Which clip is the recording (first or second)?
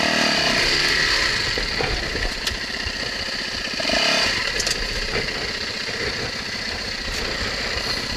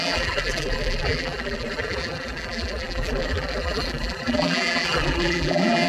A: first